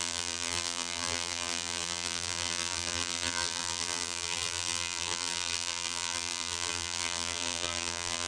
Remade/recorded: remade